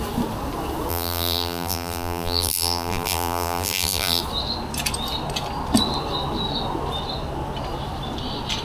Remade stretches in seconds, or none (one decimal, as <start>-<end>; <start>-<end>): 0.9-4.2